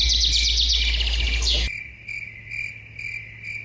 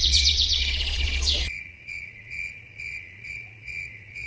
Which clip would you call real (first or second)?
first